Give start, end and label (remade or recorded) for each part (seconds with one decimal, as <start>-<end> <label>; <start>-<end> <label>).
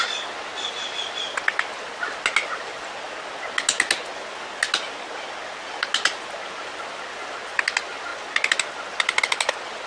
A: 0.0-9.9 recorded